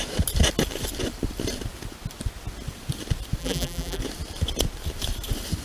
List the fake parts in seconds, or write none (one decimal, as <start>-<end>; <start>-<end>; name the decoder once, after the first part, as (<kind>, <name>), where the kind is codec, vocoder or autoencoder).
3.4-4.0 (vocoder, BigVGAN v2)